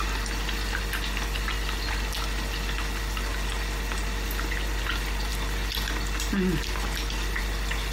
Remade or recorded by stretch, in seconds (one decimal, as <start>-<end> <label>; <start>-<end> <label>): 0.0-7.9 recorded